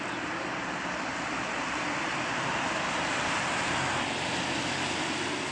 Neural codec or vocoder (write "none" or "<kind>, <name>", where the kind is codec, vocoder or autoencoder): none